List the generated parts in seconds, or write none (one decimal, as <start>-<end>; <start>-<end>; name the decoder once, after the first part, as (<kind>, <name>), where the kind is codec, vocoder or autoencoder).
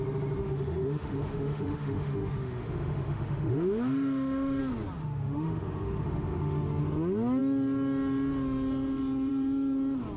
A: 0.4-4.6 (autoencoder, DAC-VAE); 5.0-6.8